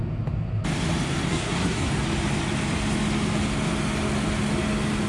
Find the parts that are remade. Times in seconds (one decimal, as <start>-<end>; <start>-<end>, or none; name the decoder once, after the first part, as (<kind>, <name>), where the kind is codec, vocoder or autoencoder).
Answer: 1.3-1.9 (codec, SNAC)